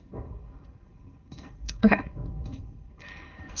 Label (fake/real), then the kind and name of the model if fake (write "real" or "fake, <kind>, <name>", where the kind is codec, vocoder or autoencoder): fake, codec, SNAC